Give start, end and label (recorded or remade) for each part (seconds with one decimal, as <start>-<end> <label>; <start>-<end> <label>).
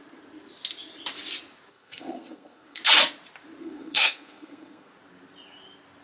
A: 0.0-1.7 recorded; 1.7-2.8 remade; 2.8-3.6 recorded; 3.6-4.9 remade; 4.9-6.0 recorded